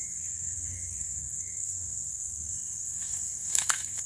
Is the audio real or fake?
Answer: fake